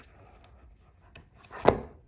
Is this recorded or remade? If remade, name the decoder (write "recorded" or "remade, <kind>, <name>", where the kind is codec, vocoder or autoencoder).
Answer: recorded